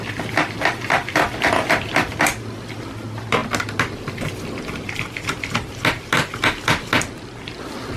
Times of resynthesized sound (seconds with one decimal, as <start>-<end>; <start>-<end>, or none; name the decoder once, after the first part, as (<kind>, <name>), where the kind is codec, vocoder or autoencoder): none